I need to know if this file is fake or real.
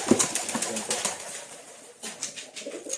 real